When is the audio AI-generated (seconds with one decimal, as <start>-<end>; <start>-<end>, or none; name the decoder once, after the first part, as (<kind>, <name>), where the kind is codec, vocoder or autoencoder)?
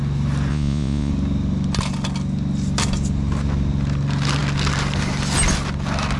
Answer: 0.5-1.1 (vocoder, Vocos)